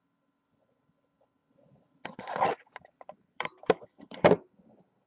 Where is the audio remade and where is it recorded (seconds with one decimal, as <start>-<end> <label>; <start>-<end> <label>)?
0.0-1.4 recorded; 1.4-4.5 remade; 4.5-5.1 recorded